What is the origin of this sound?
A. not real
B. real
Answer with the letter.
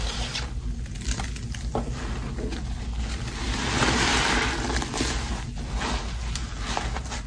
B